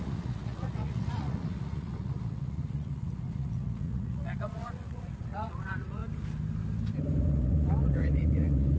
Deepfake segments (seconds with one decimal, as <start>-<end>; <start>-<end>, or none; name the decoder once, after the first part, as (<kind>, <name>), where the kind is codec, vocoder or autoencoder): 0.0-6.0 (vocoder, Vocos); 7.3-8.8